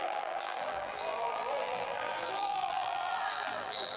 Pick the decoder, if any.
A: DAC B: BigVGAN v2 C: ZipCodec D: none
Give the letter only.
B